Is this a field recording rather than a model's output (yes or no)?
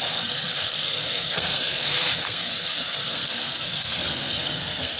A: no